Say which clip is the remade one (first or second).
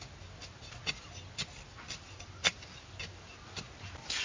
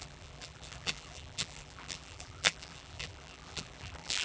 second